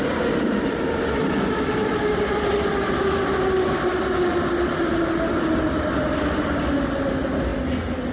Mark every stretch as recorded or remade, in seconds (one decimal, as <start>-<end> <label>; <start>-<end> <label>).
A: 0.0-1.8 recorded; 1.8-2.6 remade; 2.6-8.1 recorded